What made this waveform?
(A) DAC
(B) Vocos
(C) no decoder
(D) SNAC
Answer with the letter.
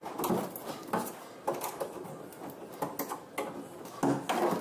C